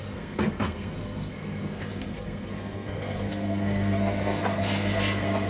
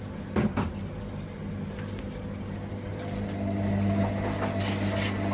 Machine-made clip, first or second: first